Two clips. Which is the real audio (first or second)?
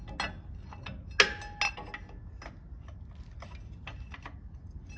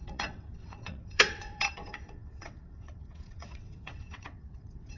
first